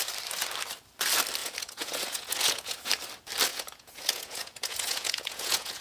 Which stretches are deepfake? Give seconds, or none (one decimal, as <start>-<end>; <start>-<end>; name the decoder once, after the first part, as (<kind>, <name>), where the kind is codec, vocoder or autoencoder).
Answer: 1.4-2.9 (vocoder, Vocos); 3.5-5.8